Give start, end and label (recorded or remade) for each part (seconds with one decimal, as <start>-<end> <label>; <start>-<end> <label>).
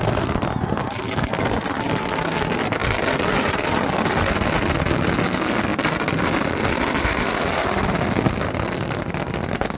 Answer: 0.0-2.8 recorded; 2.8-4.1 remade; 4.1-9.8 recorded